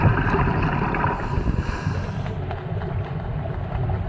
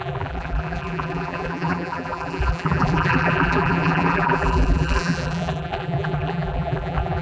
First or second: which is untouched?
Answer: first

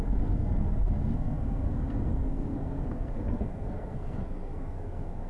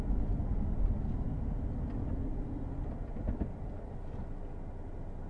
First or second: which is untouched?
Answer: second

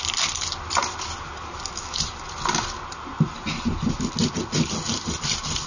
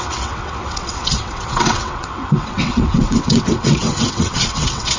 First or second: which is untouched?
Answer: first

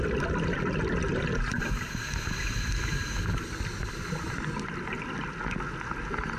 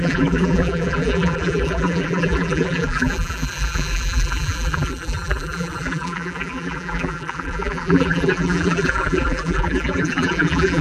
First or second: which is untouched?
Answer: first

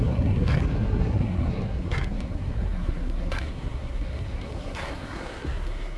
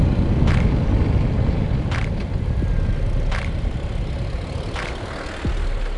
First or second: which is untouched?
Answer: second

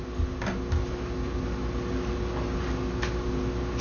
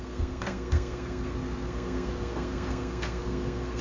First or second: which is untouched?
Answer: first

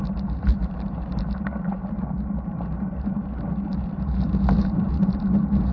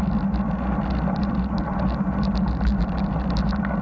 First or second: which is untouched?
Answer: second